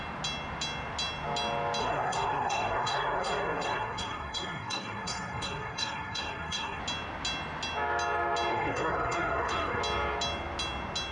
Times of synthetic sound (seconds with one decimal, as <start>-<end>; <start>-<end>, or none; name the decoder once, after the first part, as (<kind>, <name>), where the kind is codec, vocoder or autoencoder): 1.8-6.8 (codec, SNAC); 8.5-9.8